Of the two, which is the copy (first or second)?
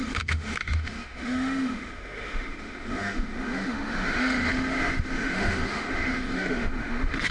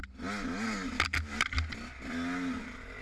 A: first